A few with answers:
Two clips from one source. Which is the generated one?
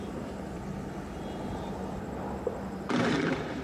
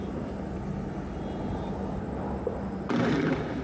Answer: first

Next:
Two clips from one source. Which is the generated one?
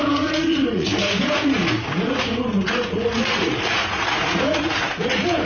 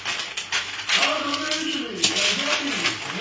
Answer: first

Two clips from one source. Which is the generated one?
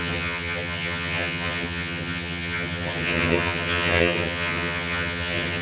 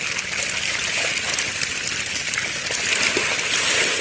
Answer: first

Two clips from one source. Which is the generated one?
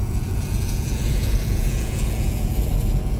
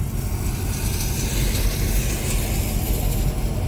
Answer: first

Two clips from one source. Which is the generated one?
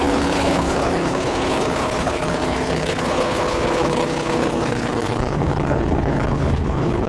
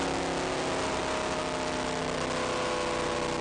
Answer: first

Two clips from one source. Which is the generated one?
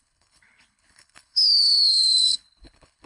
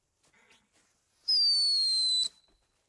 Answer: first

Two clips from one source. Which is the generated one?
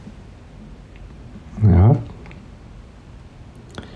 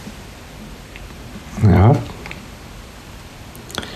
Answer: second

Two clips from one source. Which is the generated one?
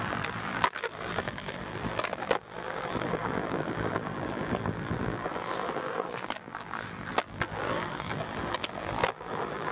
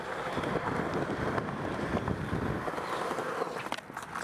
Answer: first